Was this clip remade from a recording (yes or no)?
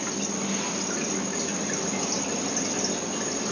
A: no